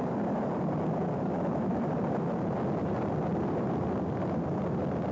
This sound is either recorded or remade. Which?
recorded